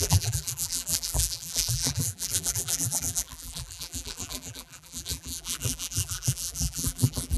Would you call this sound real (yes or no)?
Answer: no